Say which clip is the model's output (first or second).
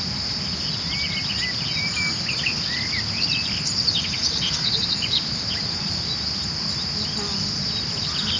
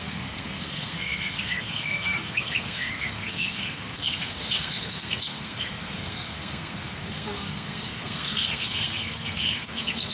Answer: second